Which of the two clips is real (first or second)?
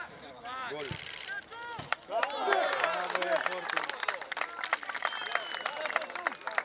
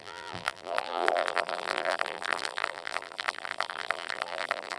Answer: first